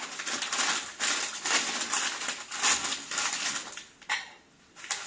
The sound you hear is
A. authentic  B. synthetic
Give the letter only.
A